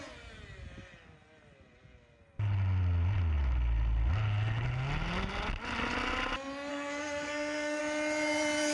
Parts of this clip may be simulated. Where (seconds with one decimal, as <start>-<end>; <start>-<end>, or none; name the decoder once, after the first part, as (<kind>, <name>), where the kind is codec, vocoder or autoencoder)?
6.7-7.8 (codec, SNAC)